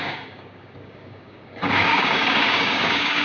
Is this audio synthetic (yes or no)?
yes